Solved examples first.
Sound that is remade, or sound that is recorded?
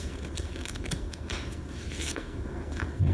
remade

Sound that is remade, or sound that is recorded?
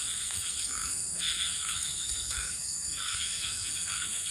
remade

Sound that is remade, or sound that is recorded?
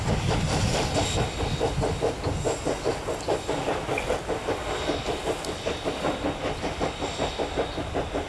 recorded